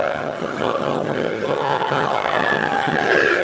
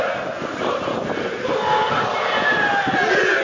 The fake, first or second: first